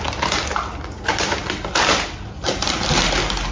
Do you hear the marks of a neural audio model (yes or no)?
no